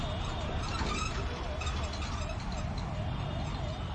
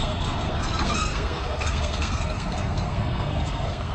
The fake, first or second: second